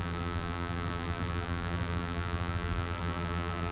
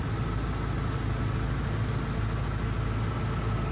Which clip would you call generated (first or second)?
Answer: first